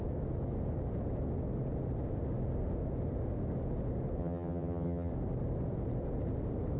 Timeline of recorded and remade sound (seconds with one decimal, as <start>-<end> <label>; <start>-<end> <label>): 0.0-4.2 recorded; 4.2-5.1 remade; 5.1-6.8 recorded